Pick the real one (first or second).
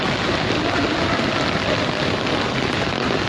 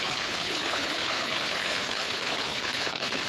first